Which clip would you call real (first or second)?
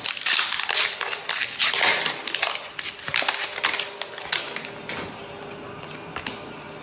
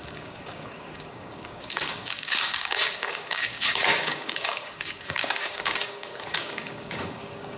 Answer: first